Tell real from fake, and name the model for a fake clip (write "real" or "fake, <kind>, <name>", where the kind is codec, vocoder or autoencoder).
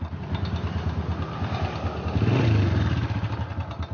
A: real